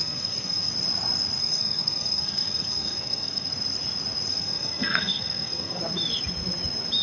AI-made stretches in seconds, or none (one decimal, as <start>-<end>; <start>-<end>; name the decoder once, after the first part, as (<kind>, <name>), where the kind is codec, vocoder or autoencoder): 0.0-0.7 (codec, SNAC); 1.4-3.5; 4.3-5.8